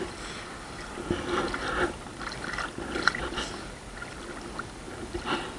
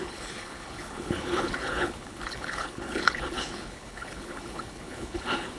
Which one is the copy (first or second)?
second